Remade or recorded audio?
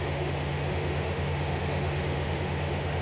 remade